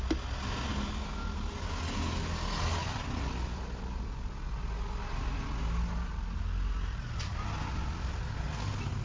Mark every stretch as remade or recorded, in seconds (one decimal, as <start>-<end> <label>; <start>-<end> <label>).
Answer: 0.0-9.0 recorded